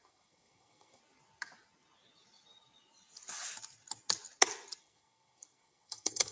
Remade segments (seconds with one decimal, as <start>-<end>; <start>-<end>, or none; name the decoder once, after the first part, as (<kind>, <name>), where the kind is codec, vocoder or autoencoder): 0.0-1.0 (codec, SNAC); 4.8-6.3